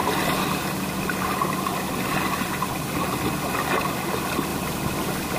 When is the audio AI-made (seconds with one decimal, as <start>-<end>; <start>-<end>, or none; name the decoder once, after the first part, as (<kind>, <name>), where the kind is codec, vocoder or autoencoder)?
none